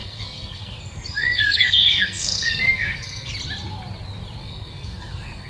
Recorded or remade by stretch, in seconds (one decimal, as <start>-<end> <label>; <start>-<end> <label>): 0.0-3.3 remade; 3.3-4.4 recorded; 4.4-5.5 remade